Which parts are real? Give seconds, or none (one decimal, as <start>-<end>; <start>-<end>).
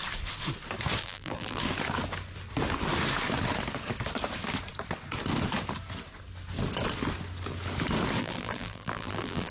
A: 0.0-1.0; 1.6-8.2